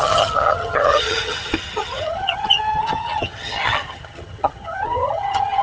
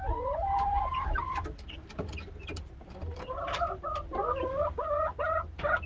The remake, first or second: first